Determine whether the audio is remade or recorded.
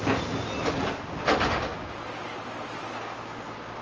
recorded